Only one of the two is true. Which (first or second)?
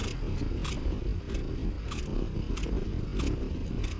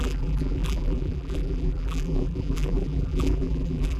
first